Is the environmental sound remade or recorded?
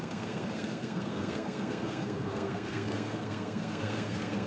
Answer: remade